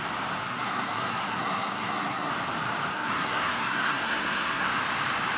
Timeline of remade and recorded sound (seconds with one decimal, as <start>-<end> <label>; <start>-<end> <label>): 0.0-0.4 recorded; 0.4-2.3 remade; 2.3-2.9 recorded; 2.9-4.7 remade; 4.7-5.4 recorded